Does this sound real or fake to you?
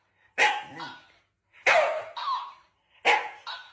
real